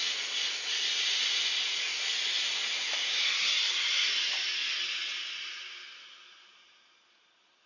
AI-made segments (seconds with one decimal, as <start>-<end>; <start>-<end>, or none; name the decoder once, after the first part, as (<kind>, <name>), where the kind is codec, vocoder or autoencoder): none